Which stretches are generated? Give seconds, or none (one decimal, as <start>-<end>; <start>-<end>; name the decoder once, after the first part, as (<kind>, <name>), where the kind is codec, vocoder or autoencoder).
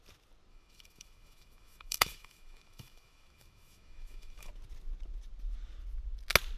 0.5-4.5 (autoencoder, DAC-VAE)